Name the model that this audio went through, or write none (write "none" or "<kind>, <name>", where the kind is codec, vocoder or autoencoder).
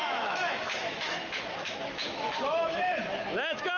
autoencoder, DAC-VAE